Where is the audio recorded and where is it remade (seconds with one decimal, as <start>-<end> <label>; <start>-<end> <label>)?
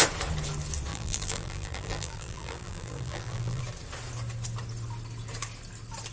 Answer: 0.0-0.9 recorded; 0.9-3.6 remade; 3.6-6.1 recorded